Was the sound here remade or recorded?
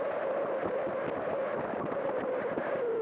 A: recorded